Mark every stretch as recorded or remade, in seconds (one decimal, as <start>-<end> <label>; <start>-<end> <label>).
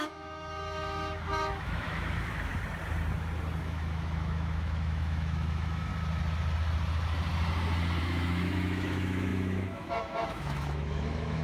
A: 0.0-2.5 remade; 2.5-3.6 recorded; 3.6-5.9 remade; 5.9-8.0 recorded; 8.0-11.4 remade